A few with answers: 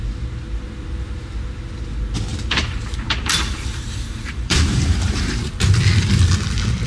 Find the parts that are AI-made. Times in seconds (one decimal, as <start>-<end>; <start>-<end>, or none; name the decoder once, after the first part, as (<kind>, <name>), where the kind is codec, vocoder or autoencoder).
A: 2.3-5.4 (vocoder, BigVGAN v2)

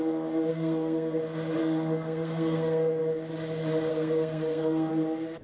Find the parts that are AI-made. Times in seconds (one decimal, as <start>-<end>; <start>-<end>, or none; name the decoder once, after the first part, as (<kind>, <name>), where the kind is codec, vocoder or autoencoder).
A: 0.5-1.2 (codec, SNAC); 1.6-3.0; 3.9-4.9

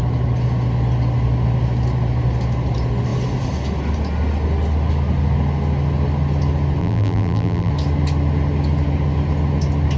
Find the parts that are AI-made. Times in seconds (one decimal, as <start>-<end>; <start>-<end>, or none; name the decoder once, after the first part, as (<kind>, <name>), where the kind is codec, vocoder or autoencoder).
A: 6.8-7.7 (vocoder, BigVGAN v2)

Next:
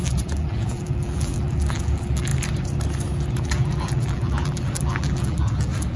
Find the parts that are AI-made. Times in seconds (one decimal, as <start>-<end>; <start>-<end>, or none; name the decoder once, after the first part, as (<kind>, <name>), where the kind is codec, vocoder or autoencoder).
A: 0.0-2.3 (vocoder, BigVGAN v2); 3.4-6.0

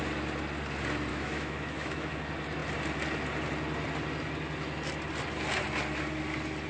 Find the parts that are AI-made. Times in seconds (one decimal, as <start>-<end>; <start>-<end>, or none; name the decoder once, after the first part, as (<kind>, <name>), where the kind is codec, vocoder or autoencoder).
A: 1.1-2.1 (autoencoder, DAC-VAE)

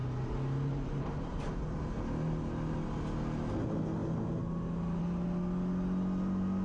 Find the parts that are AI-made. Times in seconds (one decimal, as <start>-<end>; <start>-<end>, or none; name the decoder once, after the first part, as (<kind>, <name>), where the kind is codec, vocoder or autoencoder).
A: 0.0-1.7 (vocoder, BigVGAN v2)

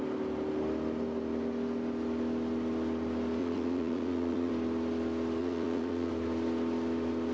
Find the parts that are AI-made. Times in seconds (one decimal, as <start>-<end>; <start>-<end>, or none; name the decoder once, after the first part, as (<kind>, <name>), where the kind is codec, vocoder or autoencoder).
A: 3.4-4.5 (vocoder, Vocos); 5.4-6.1

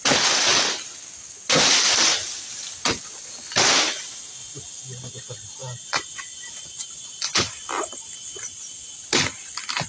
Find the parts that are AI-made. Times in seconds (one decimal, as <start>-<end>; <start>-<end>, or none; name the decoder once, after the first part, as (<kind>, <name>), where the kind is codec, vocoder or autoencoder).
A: none